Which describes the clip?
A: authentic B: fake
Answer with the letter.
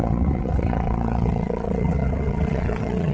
B